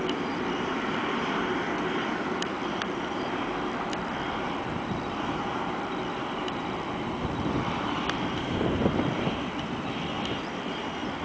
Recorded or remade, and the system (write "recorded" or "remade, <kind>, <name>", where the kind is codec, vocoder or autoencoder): remade, vocoder, BigVGAN v2